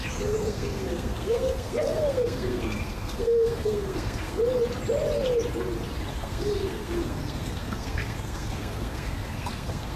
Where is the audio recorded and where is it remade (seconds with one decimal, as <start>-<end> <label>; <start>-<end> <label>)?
0.0-4.4 remade; 4.4-6.1 recorded; 6.1-10.0 remade